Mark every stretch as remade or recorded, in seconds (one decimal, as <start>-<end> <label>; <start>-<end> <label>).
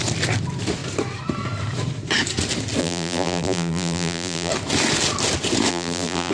0.0-2.8 recorded; 2.8-4.5 remade; 4.5-5.7 recorded; 5.7-6.3 remade